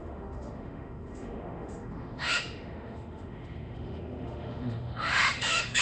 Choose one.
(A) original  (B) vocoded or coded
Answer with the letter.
B